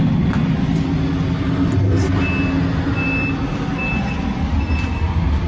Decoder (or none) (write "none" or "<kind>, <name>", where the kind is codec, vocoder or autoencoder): none